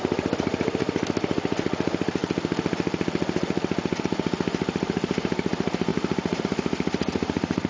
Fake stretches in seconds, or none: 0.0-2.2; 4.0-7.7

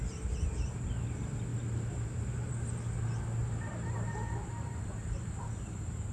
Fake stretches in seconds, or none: 1.5-2.5; 3.4-6.1

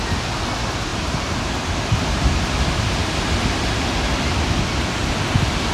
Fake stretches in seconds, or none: 0.9-1.9

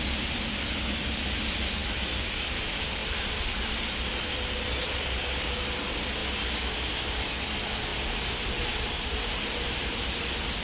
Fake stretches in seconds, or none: 3.0-3.7; 7.9-10.2

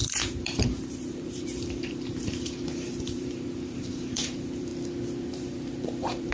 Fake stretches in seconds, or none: 0.0-4.7; 5.2-6.3

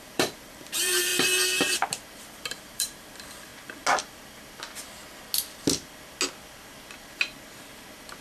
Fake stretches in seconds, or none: 0.0-3.5

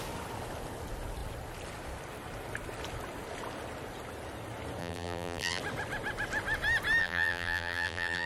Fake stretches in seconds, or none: 4.8-5.6; 7.0-8.3